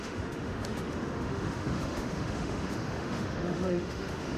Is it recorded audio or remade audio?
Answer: remade